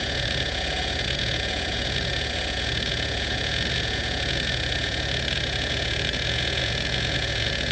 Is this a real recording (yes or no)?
no